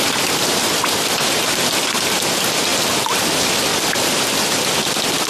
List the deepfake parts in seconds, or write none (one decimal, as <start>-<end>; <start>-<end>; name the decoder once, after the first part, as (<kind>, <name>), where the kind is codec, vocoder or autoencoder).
2.7-4.3 (vocoder, BigVGAN v2)